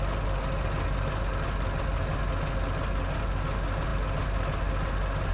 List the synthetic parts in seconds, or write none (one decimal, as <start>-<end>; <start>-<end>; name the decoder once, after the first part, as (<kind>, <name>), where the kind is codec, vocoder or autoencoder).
none